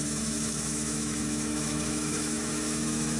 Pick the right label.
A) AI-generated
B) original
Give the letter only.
A